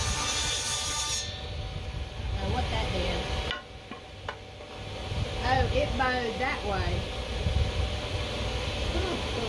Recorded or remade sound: recorded